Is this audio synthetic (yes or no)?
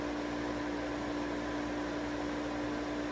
no